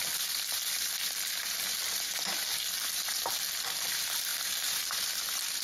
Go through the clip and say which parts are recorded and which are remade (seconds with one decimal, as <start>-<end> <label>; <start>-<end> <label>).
0.0-4.3 recorded; 4.3-5.0 remade; 5.0-5.6 recorded